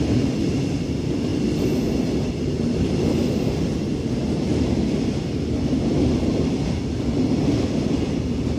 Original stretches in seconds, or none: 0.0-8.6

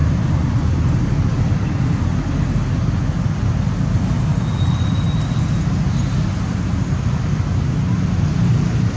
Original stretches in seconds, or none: 0.0-9.0